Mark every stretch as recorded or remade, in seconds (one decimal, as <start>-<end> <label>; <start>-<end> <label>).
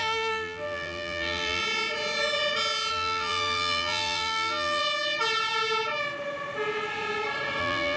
0.0-1.6 remade; 1.6-2.9 recorded; 2.9-4.8 remade; 4.8-7.6 recorded; 7.6-8.0 remade